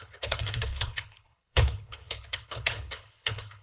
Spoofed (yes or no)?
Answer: yes